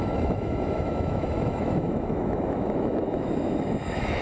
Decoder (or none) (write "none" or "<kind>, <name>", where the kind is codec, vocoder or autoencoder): autoencoder, DAC-VAE